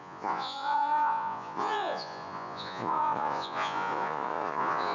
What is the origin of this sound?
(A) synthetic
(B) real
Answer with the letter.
A